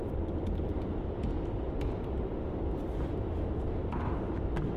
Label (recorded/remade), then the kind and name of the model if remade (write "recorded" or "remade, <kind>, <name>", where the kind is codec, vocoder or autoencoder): recorded